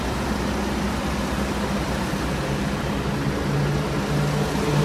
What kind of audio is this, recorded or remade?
recorded